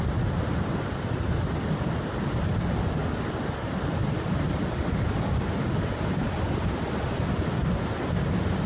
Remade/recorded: recorded